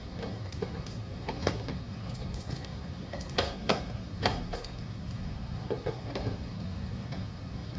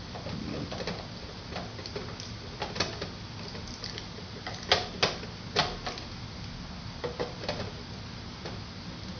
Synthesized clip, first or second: first